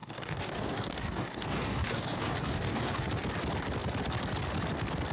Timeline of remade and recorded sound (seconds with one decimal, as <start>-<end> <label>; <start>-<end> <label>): 0.0-3.1 remade; 3.1-5.1 recorded